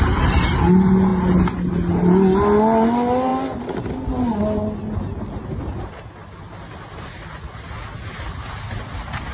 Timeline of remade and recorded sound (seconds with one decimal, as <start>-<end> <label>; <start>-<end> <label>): 0.0-9.3 recorded